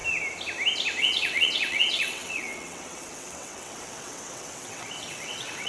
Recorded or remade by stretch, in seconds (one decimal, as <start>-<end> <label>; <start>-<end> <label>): 0.0-1.0 recorded; 1.0-5.7 remade